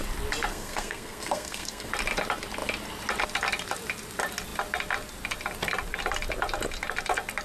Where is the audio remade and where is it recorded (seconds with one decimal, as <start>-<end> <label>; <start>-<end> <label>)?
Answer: 0.0-0.5 recorded; 0.5-1.9 remade; 1.9-7.4 recorded